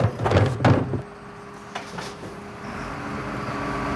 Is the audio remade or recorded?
recorded